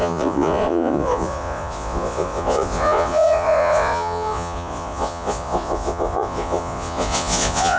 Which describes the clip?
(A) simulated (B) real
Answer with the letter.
A